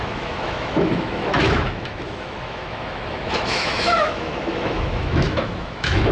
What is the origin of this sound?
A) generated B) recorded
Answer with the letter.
A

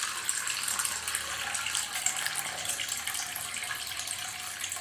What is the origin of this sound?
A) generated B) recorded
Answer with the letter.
B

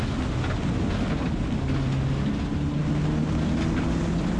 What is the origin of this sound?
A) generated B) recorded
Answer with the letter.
B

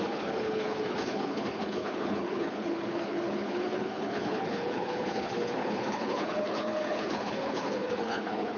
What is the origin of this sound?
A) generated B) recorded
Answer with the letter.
A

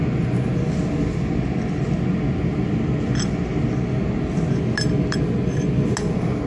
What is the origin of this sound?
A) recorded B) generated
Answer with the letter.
A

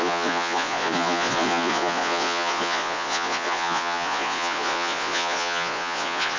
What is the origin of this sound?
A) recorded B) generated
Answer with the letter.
B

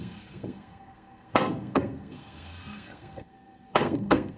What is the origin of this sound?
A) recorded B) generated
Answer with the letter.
B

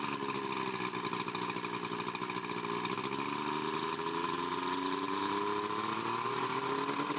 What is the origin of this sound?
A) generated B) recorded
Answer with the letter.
B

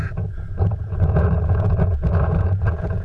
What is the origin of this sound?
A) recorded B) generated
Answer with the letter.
B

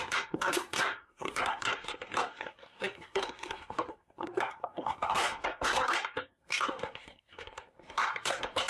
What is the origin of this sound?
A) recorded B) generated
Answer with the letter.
B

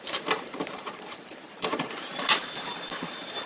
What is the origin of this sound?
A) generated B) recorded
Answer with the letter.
A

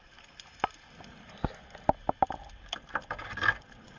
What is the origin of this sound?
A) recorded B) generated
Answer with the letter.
A